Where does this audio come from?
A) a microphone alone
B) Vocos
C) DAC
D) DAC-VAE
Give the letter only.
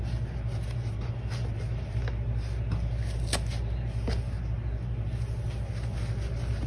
A